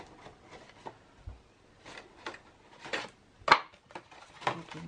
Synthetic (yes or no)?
no